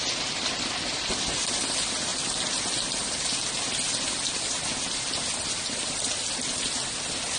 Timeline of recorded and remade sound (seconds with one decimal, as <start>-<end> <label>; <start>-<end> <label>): 0.0-7.4 recorded